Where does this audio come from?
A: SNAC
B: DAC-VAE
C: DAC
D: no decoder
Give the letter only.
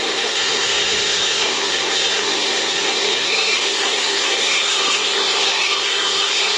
A